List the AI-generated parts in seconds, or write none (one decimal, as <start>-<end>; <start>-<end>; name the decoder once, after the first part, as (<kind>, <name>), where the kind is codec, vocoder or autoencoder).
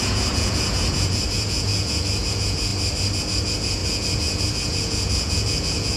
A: 0.0-2.7 (vocoder, Vocos); 3.2-6.0